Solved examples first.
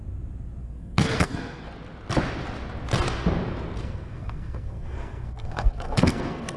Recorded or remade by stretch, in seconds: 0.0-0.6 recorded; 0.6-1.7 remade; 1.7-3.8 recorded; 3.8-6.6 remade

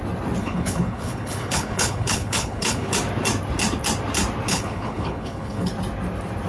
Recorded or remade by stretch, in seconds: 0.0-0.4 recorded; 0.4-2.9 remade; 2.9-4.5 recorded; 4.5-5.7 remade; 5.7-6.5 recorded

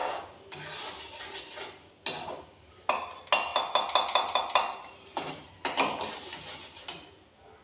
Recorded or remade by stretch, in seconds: 0.0-7.6 recorded

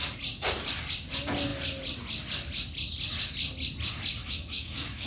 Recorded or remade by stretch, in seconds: 0.0-4.2 recorded; 4.2-5.1 remade

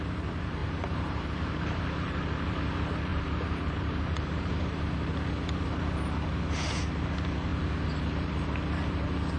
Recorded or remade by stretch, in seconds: 0.0-0.6 recorded; 0.6-2.2 remade; 2.2-3.1 recorded; 3.1-4.8 remade; 4.8-9.4 recorded

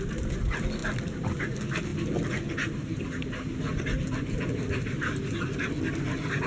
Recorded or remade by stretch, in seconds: 0.0-6.5 recorded

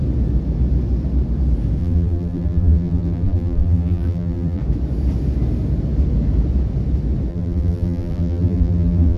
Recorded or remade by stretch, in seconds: 0.0-1.8 recorded; 1.8-4.6 remade; 4.6-7.3 recorded; 7.3-9.2 remade